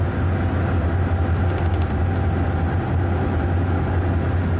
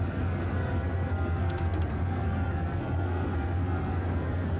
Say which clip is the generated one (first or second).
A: second